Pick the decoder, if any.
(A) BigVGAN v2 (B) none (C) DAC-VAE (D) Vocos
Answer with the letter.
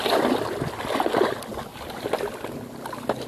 B